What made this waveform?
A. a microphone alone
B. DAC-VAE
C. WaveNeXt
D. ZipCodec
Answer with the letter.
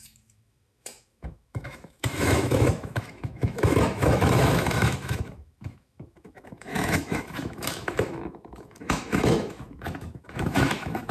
B